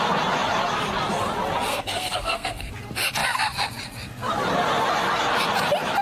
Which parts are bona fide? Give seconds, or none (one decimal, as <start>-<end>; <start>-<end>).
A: 0.0-1.7; 2.7-6.0